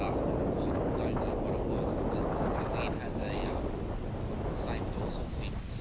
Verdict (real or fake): real